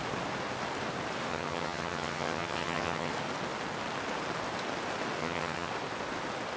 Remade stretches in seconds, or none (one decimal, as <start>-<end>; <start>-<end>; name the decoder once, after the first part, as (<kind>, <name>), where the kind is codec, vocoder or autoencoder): 1.3-3.1 (vocoder, HiFi-GAN); 5.2-5.7